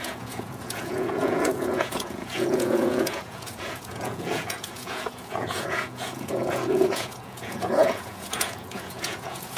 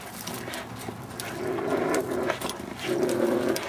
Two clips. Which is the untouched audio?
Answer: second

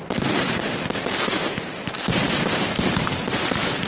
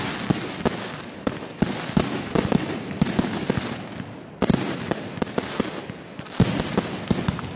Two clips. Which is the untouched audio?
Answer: second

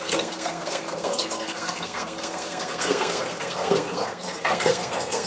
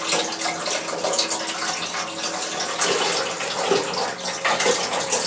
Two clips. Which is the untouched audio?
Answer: second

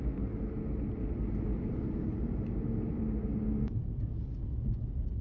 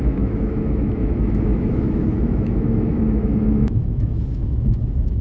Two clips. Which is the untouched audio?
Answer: first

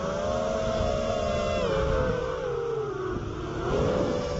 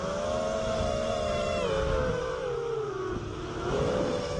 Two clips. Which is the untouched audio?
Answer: first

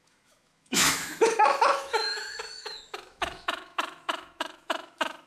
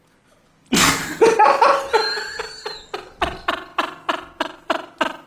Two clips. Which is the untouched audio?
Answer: second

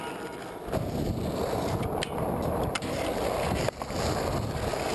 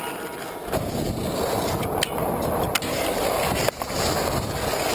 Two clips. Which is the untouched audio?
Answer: second